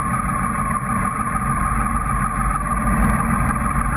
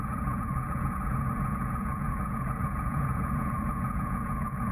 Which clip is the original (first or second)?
first